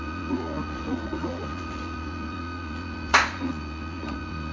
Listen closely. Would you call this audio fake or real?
fake